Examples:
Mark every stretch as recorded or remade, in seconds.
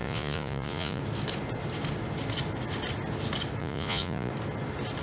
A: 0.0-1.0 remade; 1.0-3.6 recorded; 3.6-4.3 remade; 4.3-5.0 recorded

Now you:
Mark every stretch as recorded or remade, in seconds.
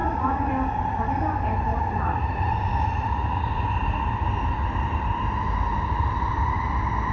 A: 0.0-0.5 remade; 0.5-1.7 recorded; 1.7-3.7 remade; 3.7-7.1 recorded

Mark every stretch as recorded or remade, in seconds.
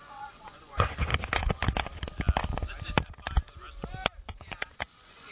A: 0.0-1.1 remade; 1.1-4.3 recorded; 4.3-5.3 remade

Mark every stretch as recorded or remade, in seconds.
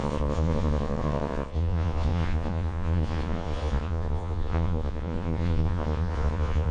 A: 0.0-6.7 remade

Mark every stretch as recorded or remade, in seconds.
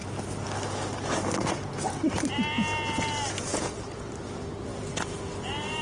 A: 0.0-3.5 recorded; 3.5-4.0 remade; 4.0-4.7 recorded; 4.7-5.8 remade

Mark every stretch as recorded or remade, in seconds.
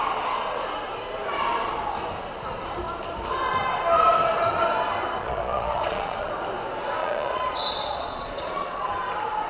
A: 0.0-5.2 recorded; 5.2-6.3 remade; 6.3-7.0 recorded; 7.0-9.0 remade; 9.0-9.5 recorded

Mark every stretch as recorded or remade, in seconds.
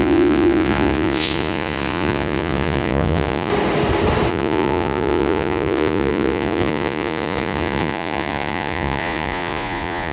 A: 0.0-3.5 remade; 3.5-4.3 recorded; 4.3-10.1 remade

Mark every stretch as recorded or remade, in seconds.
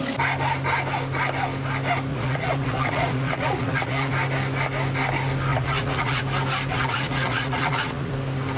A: 0.0-2.1 recorded; 2.1-4.1 remade; 4.1-5.5 recorded; 5.5-6.2 remade; 6.2-6.7 recorded; 6.7-8.1 remade; 8.1-8.6 recorded